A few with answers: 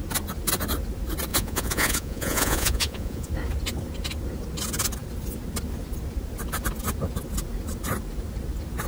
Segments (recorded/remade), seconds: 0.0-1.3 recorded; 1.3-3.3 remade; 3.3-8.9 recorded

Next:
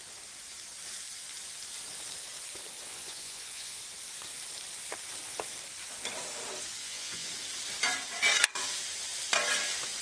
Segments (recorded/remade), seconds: 0.0-2.9 recorded; 2.9-3.8 remade; 3.8-6.8 recorded; 6.8-7.3 remade; 7.3-10.0 recorded

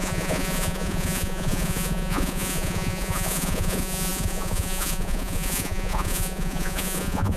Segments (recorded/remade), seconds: 0.0-7.4 remade